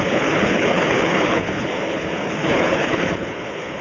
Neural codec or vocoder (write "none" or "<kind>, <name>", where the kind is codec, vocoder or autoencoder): codec, HILCodec